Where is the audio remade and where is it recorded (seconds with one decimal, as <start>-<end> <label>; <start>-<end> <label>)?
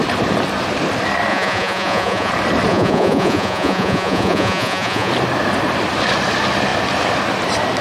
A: 0.0-1.3 recorded; 1.3-2.3 remade; 2.3-2.7 recorded; 2.7-5.1 remade; 5.1-7.8 recorded